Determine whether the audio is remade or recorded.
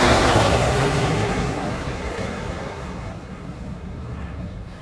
remade